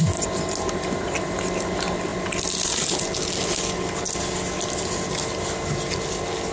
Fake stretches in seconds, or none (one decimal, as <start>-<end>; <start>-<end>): none